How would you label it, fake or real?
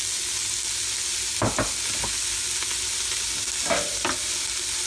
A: real